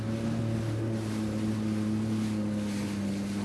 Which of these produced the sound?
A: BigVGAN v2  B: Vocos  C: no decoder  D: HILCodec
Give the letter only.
C